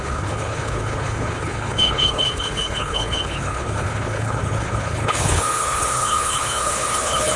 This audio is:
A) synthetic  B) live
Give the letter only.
A